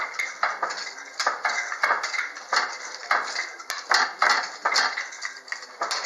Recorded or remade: recorded